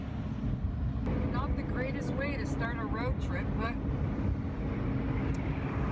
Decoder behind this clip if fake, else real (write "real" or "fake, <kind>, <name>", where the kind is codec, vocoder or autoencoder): real